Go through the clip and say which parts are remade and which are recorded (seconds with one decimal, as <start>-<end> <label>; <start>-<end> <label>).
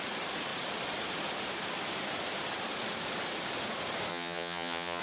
0.0-4.1 recorded; 4.1-5.0 remade